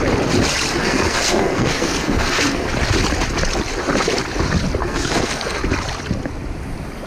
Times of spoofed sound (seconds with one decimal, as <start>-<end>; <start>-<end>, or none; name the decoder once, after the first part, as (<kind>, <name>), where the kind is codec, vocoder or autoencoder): 0.8-2.7 (codec, SNAC); 4.8-5.6